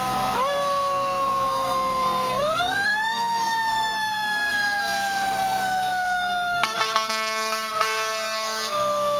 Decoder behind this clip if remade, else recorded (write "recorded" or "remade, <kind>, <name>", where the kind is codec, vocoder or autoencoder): remade, codec, SNAC